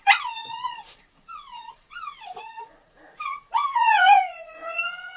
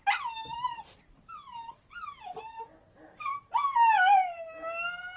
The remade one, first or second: first